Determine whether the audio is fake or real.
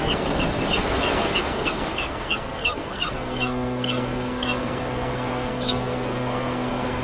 fake